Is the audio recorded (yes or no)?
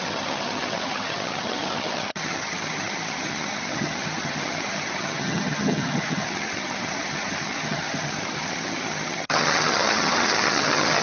no